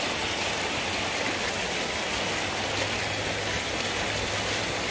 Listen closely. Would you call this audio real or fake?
real